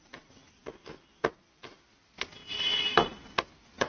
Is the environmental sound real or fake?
real